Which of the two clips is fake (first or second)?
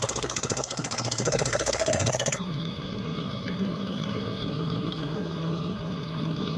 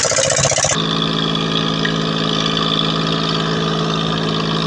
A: first